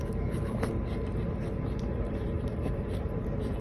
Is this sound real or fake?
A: fake